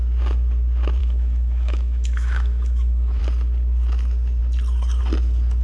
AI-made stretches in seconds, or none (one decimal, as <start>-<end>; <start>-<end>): 1.0-3.2